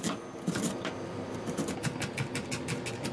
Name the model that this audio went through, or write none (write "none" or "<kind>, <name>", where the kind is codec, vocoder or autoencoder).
none